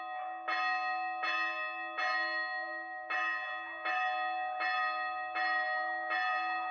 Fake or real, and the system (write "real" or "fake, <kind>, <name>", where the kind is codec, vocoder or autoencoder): real